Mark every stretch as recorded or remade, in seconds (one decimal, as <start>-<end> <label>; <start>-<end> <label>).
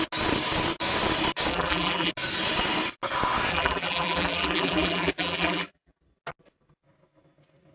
0.0-1.5 recorded; 1.5-2.1 remade; 2.1-3.5 recorded; 3.5-6.0 remade; 6.0-7.7 recorded